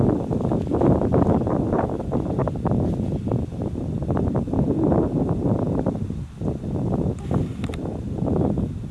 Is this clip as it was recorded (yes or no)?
yes